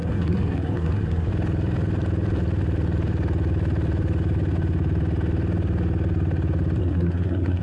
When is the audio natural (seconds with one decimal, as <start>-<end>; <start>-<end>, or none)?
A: 1.3-6.8